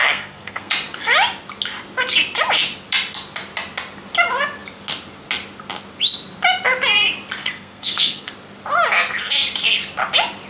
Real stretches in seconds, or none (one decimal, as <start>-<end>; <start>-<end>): 0.7-7.4; 8.3-10.5